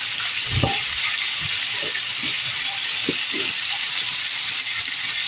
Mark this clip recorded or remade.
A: remade